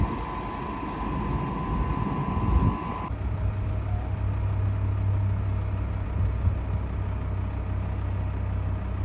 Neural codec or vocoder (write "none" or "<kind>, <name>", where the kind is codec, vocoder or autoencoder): none